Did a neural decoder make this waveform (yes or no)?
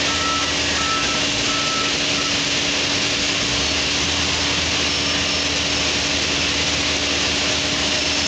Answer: no